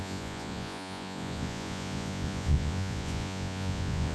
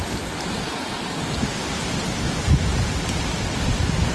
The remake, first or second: first